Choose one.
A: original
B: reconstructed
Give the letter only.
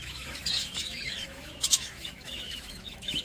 B